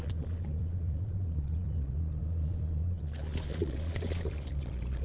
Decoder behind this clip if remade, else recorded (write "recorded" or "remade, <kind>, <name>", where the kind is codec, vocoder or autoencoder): remade, vocoder, Vocos